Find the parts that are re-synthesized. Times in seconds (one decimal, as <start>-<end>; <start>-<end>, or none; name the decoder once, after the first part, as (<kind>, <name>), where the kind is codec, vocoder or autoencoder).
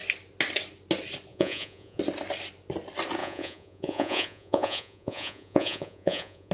1.3-2.0 (vocoder, Vocos); 3.2-6.5